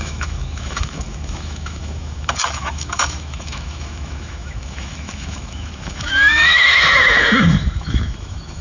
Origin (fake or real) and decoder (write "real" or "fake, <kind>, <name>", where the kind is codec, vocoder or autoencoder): fake, autoencoder, DAC-VAE